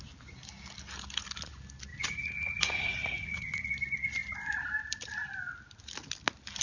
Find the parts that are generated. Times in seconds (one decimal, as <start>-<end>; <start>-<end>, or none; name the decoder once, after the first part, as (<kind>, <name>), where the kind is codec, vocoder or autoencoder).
1.9-3.7 (vocoder, Vocos)